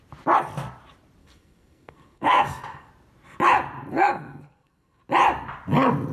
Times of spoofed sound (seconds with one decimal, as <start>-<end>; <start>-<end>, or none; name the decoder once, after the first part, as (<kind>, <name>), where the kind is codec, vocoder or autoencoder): 1.2-2.9 (codec, SNAC); 3.9-5.0